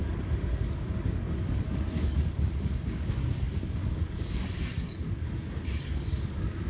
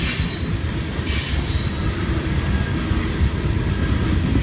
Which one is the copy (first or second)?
first